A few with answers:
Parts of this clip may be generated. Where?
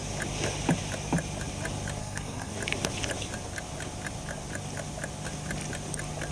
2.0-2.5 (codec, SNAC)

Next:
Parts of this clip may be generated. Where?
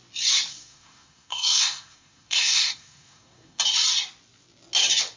0.5-3.6 (codec, SNAC)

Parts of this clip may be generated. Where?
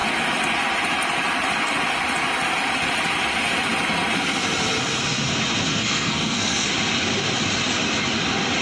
5.7-6.7 (codec, SNAC)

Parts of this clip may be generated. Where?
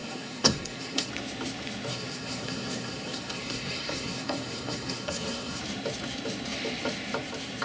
0.0-1.1 (codec, SNAC); 1.9-5.6